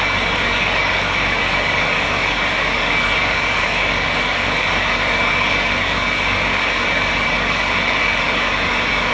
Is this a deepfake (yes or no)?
yes